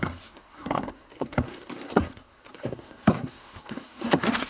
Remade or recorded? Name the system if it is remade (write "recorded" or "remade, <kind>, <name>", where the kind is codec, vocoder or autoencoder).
remade, codec, SNAC